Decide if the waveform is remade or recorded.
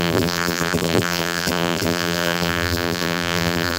remade